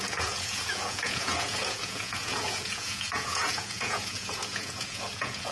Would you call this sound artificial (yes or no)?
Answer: yes